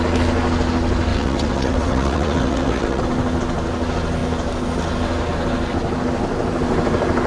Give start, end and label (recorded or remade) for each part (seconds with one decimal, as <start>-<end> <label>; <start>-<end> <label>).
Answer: 0.0-1.1 recorded; 1.1-3.0 remade; 3.0-7.3 recorded